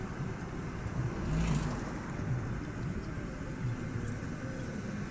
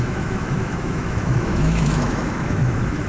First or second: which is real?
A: first